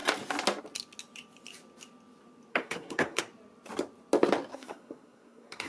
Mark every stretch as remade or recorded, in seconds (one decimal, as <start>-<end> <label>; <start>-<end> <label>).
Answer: 0.0-2.5 recorded; 2.5-3.2 remade; 3.2-4.5 recorded; 4.5-5.7 remade